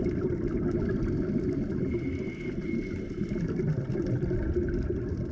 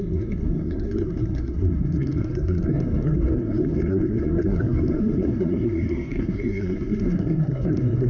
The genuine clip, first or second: first